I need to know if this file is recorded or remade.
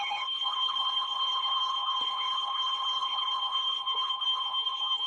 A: remade